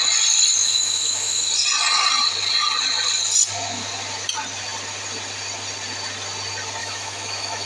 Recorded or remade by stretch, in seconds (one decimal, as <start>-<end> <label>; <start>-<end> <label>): 0.0-0.6 recorded; 0.6-1.5 remade; 1.5-6.8 recorded; 6.8-7.7 remade

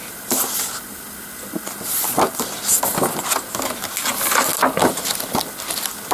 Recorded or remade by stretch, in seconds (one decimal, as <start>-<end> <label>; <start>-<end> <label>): 0.0-6.1 recorded

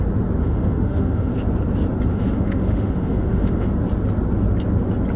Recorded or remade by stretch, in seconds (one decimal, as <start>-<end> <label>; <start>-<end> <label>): 0.0-0.4 recorded; 0.4-1.3 remade; 1.3-2.1 recorded; 2.1-3.7 remade; 3.7-5.2 recorded

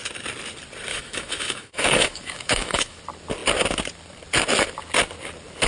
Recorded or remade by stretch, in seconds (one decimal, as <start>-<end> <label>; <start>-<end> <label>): 0.0-0.9 recorded; 0.9-3.0 remade; 3.0-5.7 recorded

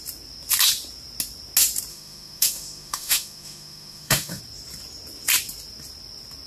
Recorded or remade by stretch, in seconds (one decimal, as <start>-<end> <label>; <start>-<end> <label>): 0.0-1.9 recorded; 1.9-4.4 remade; 4.4-6.5 recorded

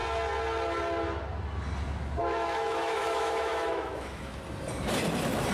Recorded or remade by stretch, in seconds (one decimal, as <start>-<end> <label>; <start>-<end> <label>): 0.0-2.2 recorded; 2.2-4.4 remade; 4.4-5.5 recorded

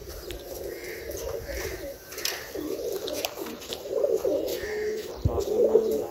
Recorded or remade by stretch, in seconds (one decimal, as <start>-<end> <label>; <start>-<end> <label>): 0.0-4.5 recorded; 4.5-5.1 remade; 5.1-6.1 recorded